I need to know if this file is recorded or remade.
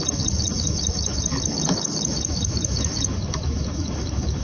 remade